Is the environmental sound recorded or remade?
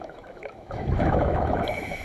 remade